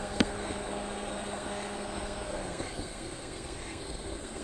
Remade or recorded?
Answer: remade